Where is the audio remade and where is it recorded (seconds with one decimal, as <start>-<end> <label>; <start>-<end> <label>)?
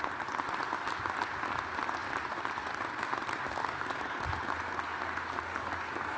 0.0-3.6 recorded; 3.6-4.3 remade; 4.3-5.5 recorded; 5.5-6.2 remade